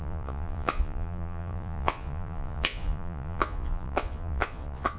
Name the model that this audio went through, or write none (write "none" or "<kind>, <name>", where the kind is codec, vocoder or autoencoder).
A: vocoder, Vocos